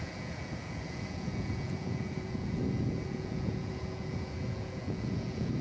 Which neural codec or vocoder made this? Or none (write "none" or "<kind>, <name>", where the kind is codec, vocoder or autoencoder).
vocoder, Vocos